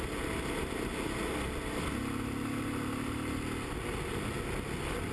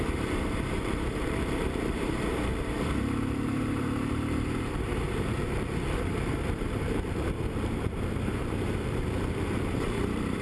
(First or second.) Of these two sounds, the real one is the first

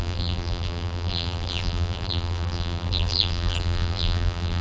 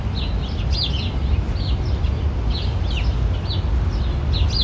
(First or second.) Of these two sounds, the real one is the second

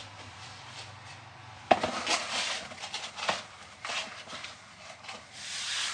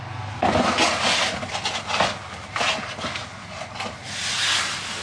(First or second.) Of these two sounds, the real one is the second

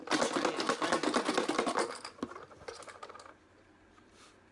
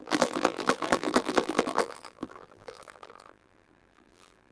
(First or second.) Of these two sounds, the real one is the first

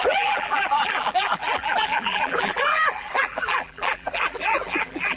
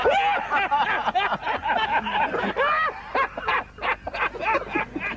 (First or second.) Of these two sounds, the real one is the second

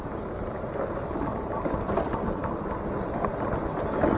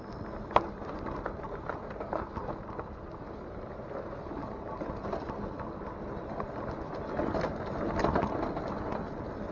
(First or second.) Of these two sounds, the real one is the second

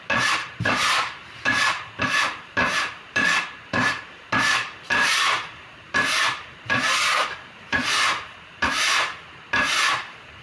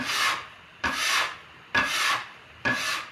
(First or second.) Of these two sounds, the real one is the second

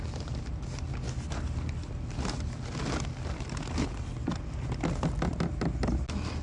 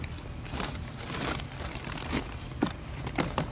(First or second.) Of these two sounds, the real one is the first